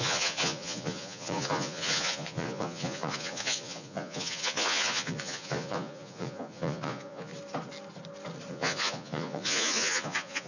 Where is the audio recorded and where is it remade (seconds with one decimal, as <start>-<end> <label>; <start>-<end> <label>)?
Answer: 0.0-7.3 remade; 7.3-8.5 recorded; 8.5-10.5 remade